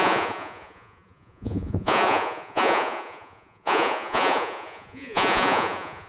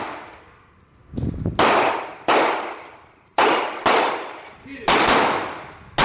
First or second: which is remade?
first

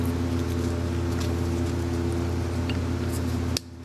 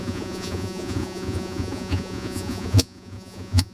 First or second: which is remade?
second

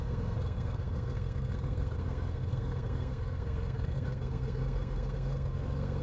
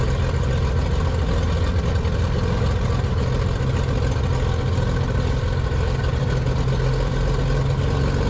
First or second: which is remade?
first